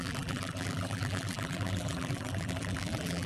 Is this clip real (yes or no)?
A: no